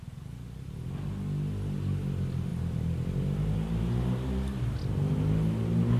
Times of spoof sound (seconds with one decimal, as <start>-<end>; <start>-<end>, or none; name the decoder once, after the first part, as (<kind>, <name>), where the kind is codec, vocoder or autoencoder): none